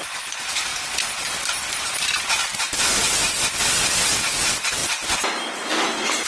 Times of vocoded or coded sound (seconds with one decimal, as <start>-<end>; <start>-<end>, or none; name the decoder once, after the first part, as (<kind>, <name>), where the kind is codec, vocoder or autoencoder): none

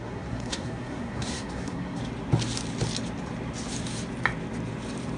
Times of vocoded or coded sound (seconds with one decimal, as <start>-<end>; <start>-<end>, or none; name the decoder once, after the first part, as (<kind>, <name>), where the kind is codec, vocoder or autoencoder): 0.0-2.0 (codec, SNAC)